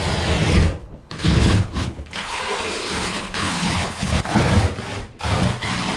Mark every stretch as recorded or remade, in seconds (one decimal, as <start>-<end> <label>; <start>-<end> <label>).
0.0-0.8 recorded; 0.8-2.4 remade; 2.4-2.8 recorded; 2.8-4.5 remade; 4.5-6.0 recorded